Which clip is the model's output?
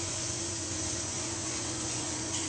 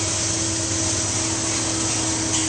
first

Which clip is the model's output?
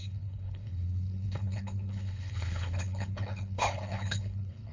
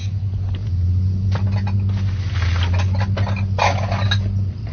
first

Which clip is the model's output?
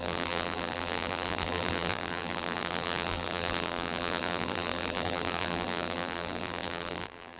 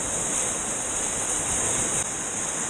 first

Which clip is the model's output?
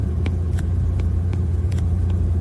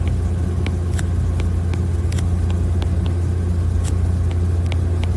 first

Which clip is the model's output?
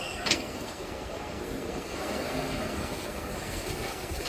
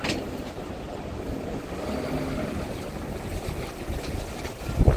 first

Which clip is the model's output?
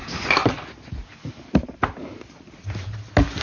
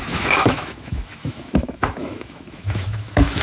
second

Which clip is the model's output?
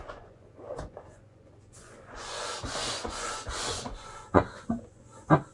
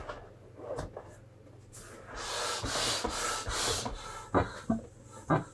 first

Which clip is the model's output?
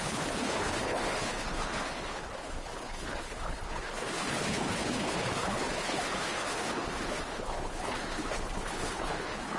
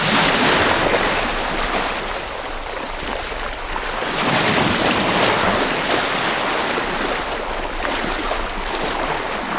first